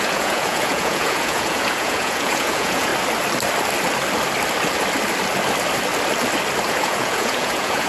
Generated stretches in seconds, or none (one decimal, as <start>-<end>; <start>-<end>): 0.0-2.9; 6.7-7.9